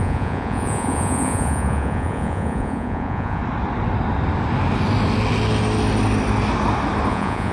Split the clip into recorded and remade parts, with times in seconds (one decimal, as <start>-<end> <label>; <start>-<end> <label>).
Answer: 0.0-3.4 remade; 3.4-7.1 recorded; 7.1-7.5 remade